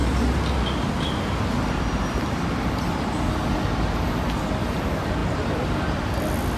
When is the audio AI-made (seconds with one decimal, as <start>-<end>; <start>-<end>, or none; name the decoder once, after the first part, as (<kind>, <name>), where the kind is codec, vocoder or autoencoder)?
none